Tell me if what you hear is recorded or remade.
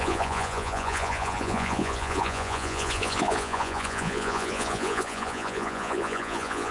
remade